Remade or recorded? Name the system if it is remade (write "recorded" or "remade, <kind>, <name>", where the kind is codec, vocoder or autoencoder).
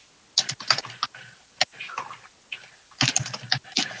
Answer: recorded